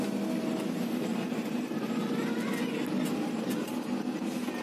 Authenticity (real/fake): real